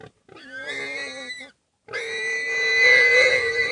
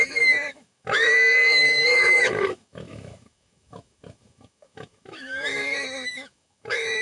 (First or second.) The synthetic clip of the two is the second